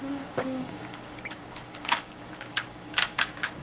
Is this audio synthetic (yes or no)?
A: yes